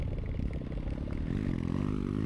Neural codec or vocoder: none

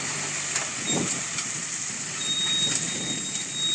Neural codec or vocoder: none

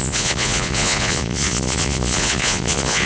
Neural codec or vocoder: vocoder, Vocos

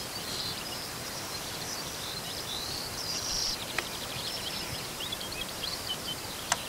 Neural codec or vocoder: vocoder, BigVGAN v2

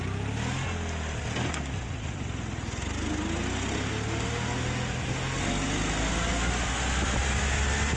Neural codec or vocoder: none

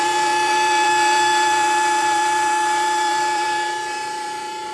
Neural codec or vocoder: vocoder, BigVGAN v2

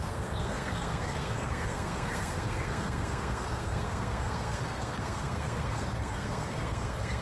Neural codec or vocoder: codec, SNAC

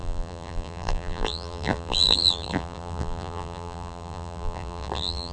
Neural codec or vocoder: vocoder, BigVGAN v2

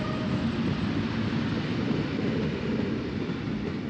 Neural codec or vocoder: none